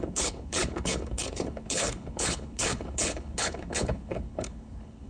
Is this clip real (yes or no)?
no